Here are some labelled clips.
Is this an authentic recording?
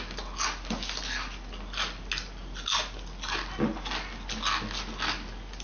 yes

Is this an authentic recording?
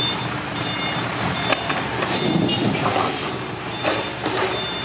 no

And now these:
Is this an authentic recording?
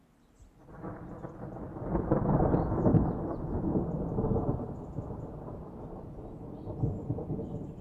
yes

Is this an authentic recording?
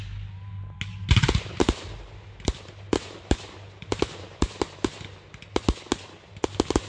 yes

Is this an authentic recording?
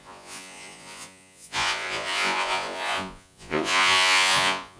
no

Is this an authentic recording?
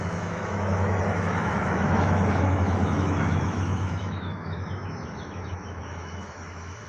no